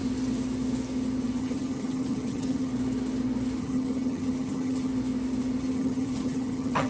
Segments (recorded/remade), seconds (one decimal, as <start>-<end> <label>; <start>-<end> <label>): 0.0-1.4 recorded; 1.4-2.7 remade; 2.7-3.6 recorded; 3.6-4.9 remade; 4.9-5.6 recorded; 5.6-6.9 remade